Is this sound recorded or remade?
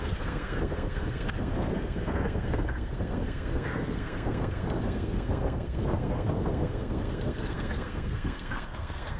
remade